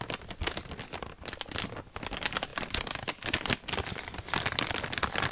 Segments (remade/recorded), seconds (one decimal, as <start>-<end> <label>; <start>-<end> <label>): 0.0-5.3 recorded